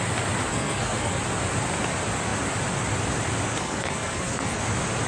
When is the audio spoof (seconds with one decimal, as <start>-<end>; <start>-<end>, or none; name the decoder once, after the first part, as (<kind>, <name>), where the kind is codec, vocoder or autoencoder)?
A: 0.5-1.2 (codec, SNAC); 3.5-4.6